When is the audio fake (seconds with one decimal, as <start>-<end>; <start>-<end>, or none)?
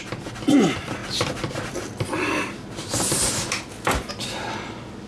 none